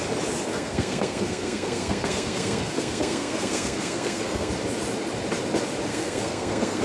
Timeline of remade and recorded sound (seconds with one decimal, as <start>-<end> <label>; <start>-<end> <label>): 0.0-0.5 recorded; 0.5-4.5 remade; 4.5-5.9 recorded; 5.9-6.8 remade